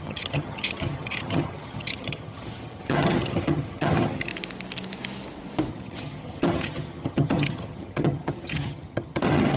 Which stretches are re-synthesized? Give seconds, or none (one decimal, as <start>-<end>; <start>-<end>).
0.0-4.3; 5.7-9.6